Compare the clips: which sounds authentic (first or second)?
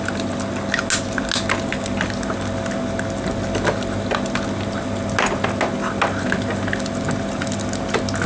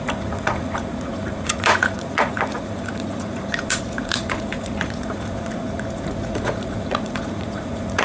first